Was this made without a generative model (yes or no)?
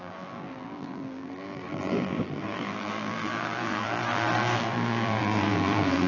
no